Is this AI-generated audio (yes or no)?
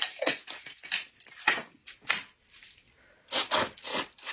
no